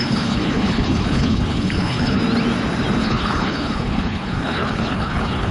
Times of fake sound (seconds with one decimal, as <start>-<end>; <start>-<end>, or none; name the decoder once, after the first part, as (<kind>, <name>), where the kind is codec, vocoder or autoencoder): 0.0-2.2 (codec, HILCodec); 3.0-5.5